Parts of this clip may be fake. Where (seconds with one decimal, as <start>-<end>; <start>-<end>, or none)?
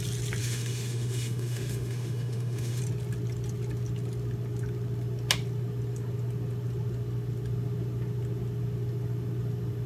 0.4-2.8